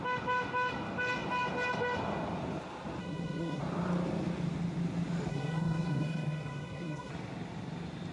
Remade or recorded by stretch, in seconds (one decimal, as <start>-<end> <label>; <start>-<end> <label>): 0.0-3.0 recorded; 3.0-3.6 remade; 3.6-5.3 recorded; 5.3-7.1 remade; 7.1-8.1 recorded